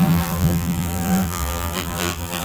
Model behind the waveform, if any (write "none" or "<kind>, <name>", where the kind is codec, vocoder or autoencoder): vocoder, BigVGAN v2